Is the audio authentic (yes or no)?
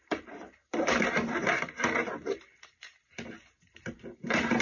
no